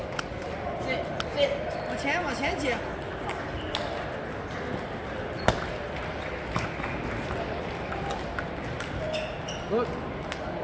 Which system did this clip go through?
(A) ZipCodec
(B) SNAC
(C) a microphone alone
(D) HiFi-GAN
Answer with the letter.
C